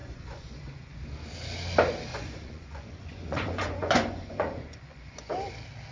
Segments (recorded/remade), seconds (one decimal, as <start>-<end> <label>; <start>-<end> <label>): 0.0-1.0 remade; 1.0-2.1 recorded; 2.1-5.3 remade; 5.3-5.9 recorded